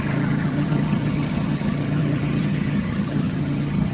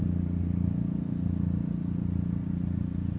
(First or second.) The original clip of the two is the second